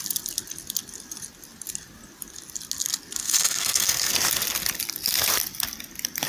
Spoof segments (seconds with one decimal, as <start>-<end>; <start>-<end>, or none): 3.2-4.1

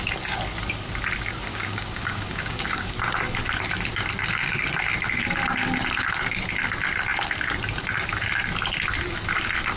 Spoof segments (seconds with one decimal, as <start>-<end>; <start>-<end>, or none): 1.5-2.9